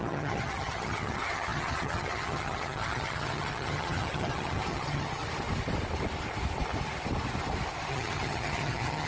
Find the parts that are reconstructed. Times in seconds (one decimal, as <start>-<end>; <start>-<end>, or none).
0.0-5.2; 7.9-9.1